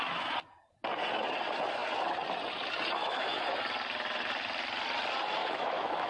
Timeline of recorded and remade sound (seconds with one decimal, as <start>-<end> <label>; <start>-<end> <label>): 0.0-3.0 recorded; 3.0-3.6 remade; 3.6-5.4 recorded; 5.4-6.1 remade